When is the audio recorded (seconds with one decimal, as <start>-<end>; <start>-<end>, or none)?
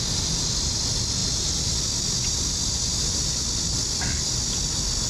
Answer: 0.0-5.1